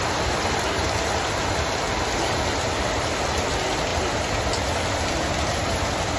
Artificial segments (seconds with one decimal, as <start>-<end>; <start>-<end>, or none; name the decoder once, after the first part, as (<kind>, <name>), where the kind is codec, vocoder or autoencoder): none